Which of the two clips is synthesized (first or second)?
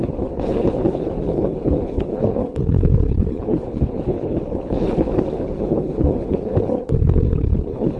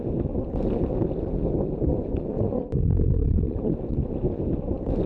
first